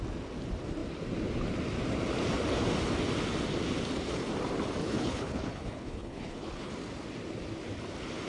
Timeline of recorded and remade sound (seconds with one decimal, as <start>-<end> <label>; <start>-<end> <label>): 0.0-4.8 recorded; 4.8-6.7 remade; 6.7-8.3 recorded